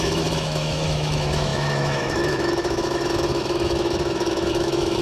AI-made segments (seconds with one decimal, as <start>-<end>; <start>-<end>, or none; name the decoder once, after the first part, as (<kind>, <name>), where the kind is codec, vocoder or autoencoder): 0.0-5.0 (autoencoder, DAC-VAE)